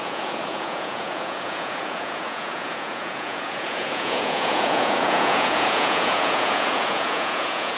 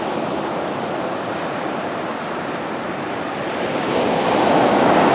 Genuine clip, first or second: second